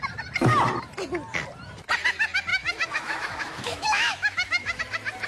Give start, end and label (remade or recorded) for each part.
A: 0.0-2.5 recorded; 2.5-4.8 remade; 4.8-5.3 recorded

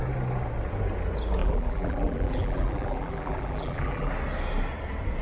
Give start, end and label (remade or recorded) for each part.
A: 0.0-1.4 recorded; 1.4-4.1 remade; 4.1-5.2 recorded

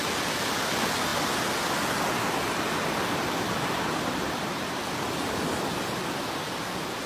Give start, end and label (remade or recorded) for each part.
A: 0.0-7.1 recorded

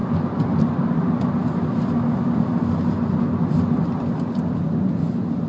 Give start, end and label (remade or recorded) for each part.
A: 0.0-5.5 recorded

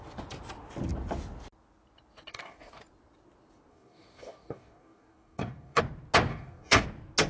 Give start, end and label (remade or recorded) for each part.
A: 0.0-2.3 recorded; 2.3-2.8 remade; 2.8-3.7 recorded; 3.7-5.8 remade; 5.8-6.3 recorded; 6.3-6.8 remade; 6.8-7.3 recorded

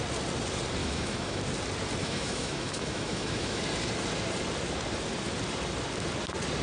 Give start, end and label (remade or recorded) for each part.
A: 0.0-0.8 recorded; 0.8-1.4 remade; 1.4-2.0 recorded; 2.0-3.6 remade; 3.6-6.6 recorded

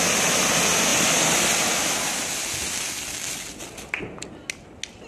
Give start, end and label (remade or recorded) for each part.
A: 0.0-5.1 recorded

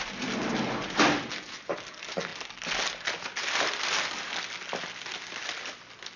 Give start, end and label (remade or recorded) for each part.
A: 0.0-6.2 recorded